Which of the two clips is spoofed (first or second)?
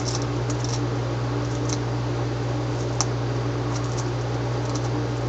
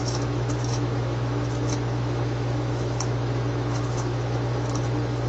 second